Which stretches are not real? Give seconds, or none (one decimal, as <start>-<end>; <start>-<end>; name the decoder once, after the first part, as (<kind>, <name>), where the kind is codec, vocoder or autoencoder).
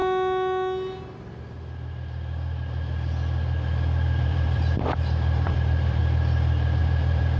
4.2-6.0 (vocoder, BigVGAN v2); 6.8-7.4